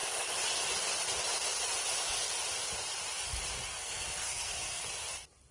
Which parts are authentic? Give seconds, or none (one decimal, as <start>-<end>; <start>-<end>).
0.0-3.7; 4.8-5.5